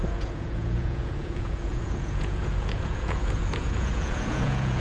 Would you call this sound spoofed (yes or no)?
yes